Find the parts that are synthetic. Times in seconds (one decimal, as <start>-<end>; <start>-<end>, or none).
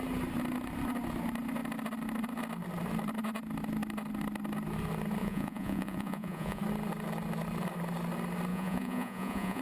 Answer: 5.2-6.6; 8.5-9.6